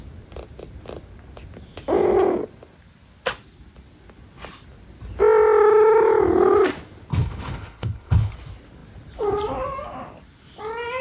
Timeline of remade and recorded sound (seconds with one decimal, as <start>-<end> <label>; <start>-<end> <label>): 0.0-7.1 recorded; 7.1-8.3 remade; 8.3-11.0 recorded